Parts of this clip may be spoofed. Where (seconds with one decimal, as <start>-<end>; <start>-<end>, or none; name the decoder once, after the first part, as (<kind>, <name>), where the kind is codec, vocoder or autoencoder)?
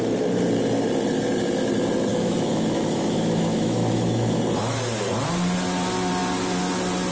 2.1-4.4 (autoencoder, DAC-VAE)